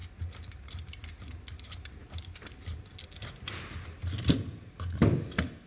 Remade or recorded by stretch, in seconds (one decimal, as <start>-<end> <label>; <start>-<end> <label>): 0.0-5.7 recorded